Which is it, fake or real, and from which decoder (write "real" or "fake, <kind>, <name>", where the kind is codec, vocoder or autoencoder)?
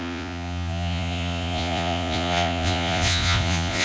fake, vocoder, Vocos